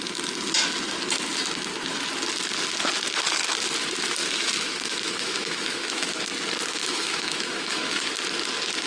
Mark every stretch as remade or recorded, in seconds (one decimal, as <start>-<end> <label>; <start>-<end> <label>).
0.0-4.2 recorded; 4.2-6.2 remade; 6.2-6.8 recorded; 6.8-8.1 remade; 8.1-8.9 recorded